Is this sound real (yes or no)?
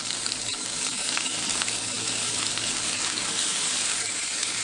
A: no